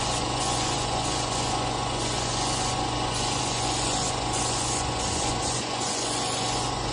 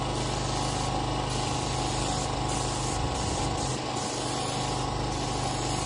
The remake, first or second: first